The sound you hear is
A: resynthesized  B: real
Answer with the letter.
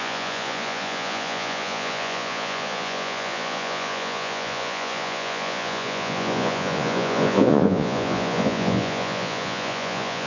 A